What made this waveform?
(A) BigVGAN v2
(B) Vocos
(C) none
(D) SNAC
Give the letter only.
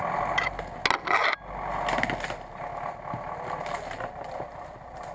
C